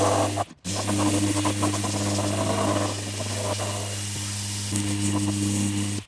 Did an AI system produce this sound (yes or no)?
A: no